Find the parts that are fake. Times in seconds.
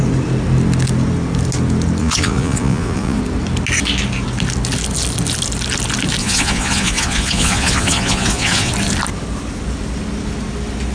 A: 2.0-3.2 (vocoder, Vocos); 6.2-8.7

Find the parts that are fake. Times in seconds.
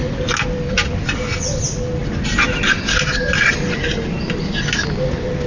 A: none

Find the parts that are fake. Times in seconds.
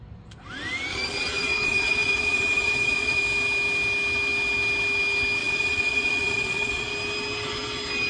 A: 0.9-3.2 (vocoder, Vocos); 5.4-6.9